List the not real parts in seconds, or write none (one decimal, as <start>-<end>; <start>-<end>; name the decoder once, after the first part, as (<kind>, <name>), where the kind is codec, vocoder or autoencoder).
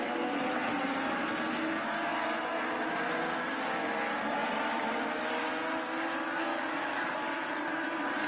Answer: 4.4-5.1 (vocoder, BigVGAN v2); 6.5-8.3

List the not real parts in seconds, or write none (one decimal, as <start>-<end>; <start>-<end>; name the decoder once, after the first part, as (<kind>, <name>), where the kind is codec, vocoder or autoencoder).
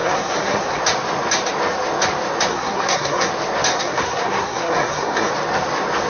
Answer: 0.0-0.8 (codec, SNAC); 2.5-3.3; 3.7-5.3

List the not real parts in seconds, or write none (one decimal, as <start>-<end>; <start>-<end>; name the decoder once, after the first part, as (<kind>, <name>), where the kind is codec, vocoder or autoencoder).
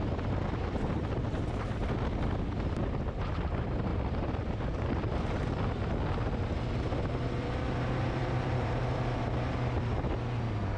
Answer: 8.2-9.2 (vocoder, BigVGAN v2)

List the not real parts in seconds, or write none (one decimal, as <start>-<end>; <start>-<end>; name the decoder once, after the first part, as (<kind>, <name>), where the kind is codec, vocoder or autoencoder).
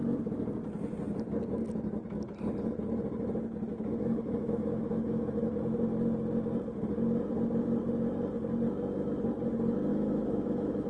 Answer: 3.7-5.5 (autoencoder, DAC-VAE); 9.9-10.9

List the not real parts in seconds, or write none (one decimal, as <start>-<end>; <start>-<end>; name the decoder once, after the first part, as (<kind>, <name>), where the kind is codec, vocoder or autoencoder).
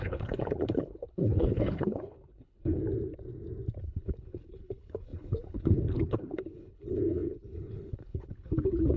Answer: 0.0-2.8 (codec, HILCodec); 3.8-9.0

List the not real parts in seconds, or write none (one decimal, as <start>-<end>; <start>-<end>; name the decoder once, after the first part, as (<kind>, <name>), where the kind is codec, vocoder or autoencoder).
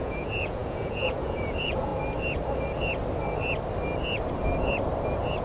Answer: 0.0-1.9 (vocoder, Vocos)